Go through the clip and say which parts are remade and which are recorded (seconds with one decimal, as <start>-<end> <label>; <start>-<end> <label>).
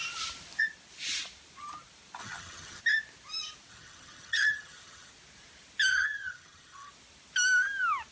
0.0-2.2 recorded; 2.2-2.8 remade; 2.8-3.7 recorded; 3.7-5.1 remade; 5.1-5.9 recorded; 5.9-6.9 remade; 6.9-8.1 recorded